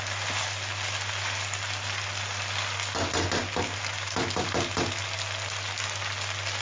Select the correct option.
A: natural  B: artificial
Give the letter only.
A